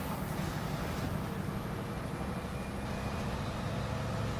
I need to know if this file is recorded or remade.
recorded